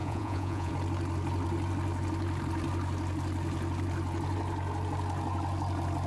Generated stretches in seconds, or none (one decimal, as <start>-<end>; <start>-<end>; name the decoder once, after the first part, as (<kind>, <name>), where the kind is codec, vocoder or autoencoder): 0.0-0.7 (vocoder, Vocos)

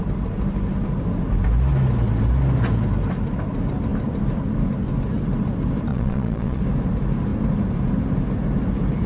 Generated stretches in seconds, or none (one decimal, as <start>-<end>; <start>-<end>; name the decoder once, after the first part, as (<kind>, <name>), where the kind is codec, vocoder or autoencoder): 5.9-6.6 (vocoder, Vocos)

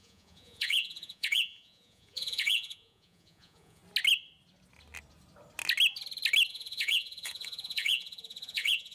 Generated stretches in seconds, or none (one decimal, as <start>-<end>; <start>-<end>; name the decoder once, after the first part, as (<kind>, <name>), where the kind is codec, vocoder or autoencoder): 0.0-3.8 (vocoder, Vocos); 6.5-8.9

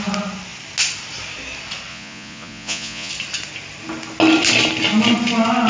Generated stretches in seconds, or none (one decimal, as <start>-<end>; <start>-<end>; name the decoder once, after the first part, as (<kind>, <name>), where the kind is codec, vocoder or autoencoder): 1.9-3.1 (vocoder, Vocos)

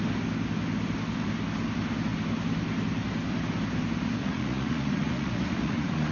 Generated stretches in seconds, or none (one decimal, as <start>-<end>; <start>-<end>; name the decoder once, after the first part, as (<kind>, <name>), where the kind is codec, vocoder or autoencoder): 4.2-6.1 (vocoder, Vocos)

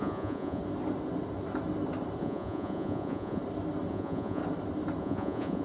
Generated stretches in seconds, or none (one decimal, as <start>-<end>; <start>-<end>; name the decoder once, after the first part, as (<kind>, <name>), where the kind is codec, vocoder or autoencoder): 0.0-0.6 (vocoder, Vocos); 2.2-3.4; 3.9-4.4; 5.0-5.6